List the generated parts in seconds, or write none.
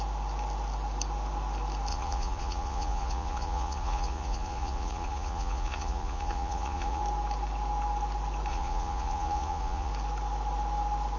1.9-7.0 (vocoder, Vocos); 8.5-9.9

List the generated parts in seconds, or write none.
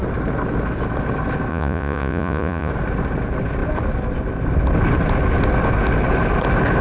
1.5-2.7 (vocoder, Vocos)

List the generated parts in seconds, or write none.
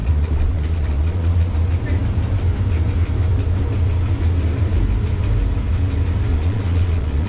0.0-1.5 (vocoder, Vocos); 6.3-7.3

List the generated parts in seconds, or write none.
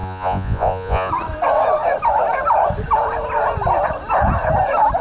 0.0-1.1 (vocoder, Vocos)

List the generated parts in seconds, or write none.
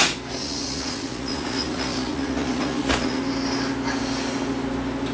0.4-3.2 (vocoder, Vocos)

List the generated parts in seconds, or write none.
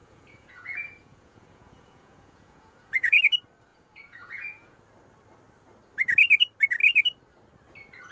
0.0-3.2 (vocoder, Vocos); 3.7-4.8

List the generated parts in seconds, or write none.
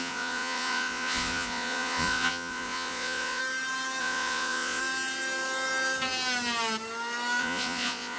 0.0-3.4 (vocoder, Vocos); 4.0-4.8; 7.4-8.2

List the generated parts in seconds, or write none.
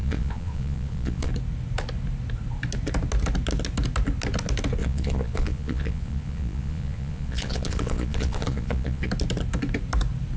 0.0-1.3 (vocoder, Vocos); 4.8-9.1